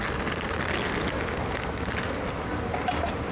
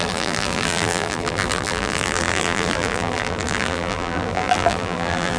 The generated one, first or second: second